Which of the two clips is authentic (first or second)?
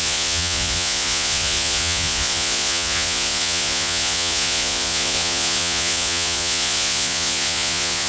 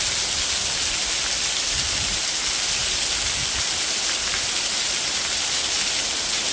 second